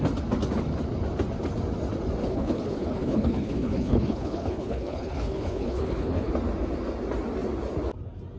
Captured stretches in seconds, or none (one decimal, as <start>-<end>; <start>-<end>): 0.0-2.2; 6.3-8.4